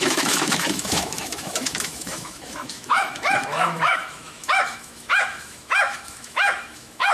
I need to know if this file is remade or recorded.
remade